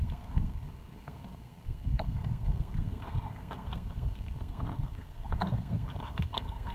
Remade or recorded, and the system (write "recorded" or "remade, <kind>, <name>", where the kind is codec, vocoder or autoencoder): remade, codec, SNAC